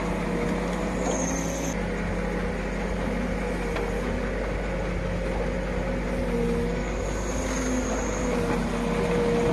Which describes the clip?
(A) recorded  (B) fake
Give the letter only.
A